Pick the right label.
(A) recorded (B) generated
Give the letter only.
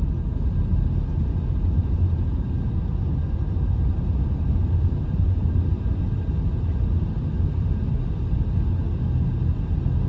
A